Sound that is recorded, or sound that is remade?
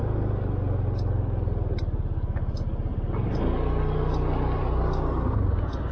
recorded